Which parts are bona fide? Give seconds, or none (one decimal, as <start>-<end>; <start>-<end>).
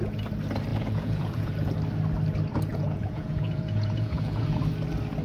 0.0-0.7; 1.7-2.7; 4.6-5.2